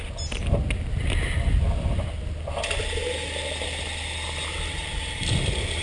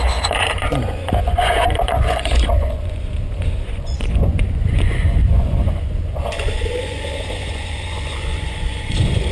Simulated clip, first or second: second